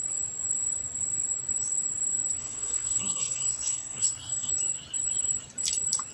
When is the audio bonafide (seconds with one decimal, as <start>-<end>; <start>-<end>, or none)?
0.0-2.4; 4.5-6.1